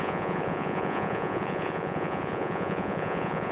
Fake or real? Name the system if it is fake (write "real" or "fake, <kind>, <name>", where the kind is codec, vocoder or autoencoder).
fake, vocoder, Vocos